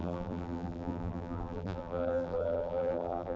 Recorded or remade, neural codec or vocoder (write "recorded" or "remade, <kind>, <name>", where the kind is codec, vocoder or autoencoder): remade, vocoder, BigVGAN v2